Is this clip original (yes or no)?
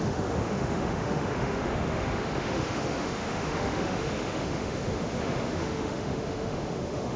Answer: no